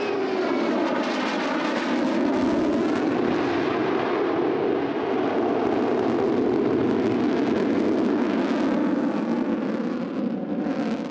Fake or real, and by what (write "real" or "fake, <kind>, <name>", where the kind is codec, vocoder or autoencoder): real